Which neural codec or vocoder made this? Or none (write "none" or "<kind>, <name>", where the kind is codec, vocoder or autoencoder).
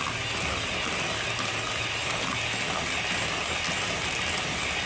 none